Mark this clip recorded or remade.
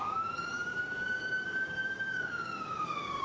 remade